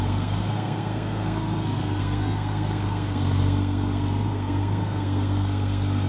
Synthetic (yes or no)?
yes